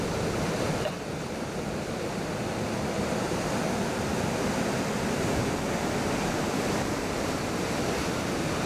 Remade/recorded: recorded